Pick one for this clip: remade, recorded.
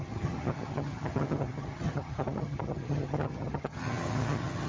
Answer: remade